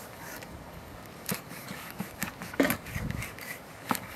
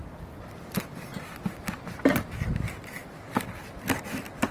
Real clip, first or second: second